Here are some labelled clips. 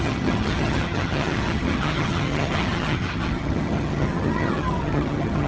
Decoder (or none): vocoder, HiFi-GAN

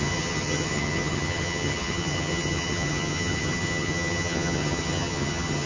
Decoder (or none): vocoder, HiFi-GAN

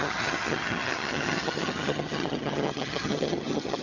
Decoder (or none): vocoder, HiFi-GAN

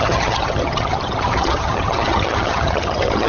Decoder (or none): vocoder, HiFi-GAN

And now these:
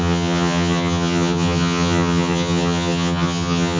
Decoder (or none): vocoder, HiFi-GAN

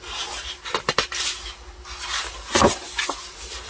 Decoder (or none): none